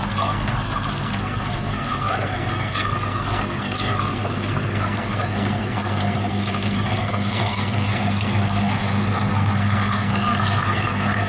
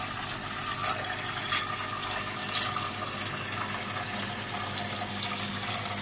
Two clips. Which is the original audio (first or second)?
second